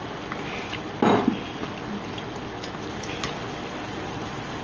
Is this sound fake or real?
real